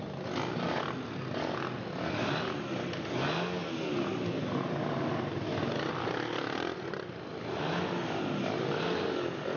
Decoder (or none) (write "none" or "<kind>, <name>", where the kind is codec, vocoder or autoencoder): none